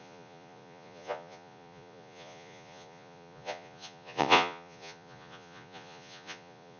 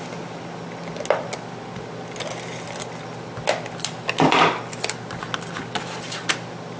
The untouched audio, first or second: second